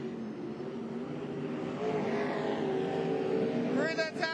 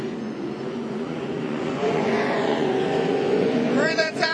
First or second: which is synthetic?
second